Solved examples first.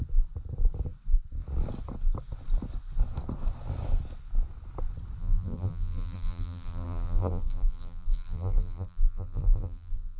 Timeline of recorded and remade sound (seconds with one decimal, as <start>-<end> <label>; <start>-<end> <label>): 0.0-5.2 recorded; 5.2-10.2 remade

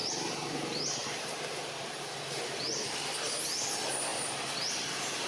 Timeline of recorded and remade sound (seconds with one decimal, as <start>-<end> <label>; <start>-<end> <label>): 0.0-3.2 remade; 3.2-4.1 recorded; 4.1-5.3 remade

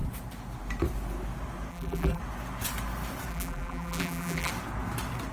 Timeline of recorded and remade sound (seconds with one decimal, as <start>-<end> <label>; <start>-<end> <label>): 0.0-1.7 recorded; 1.7-2.2 remade; 2.2-3.3 recorded; 3.3-4.5 remade; 4.5-5.3 recorded

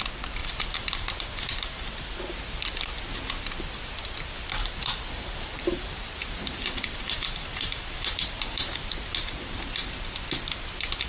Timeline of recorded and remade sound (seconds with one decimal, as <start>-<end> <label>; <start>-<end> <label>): 0.0-0.4 recorded; 0.4-2.1 remade; 2.1-4.6 recorded; 4.6-9.0 remade; 9.0-11.1 recorded